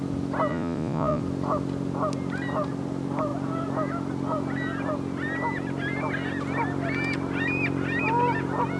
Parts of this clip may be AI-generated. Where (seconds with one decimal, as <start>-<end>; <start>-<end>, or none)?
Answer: 0.5-1.2